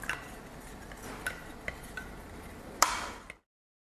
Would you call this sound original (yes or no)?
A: yes